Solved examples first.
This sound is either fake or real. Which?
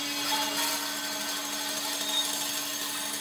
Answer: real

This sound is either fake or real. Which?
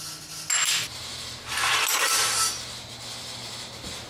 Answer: real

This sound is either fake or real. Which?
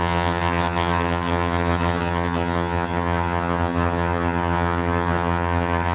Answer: fake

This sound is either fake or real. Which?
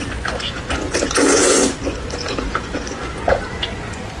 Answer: fake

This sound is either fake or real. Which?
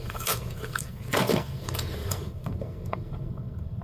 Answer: fake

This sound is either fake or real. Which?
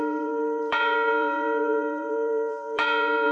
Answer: fake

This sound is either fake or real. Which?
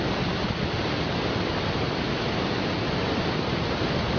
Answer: real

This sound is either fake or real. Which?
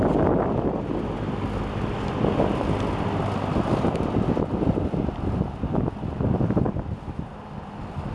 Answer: real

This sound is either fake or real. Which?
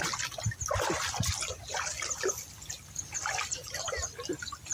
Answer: real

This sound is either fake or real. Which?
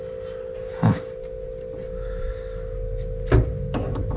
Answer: real